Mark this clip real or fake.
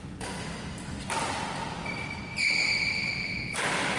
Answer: real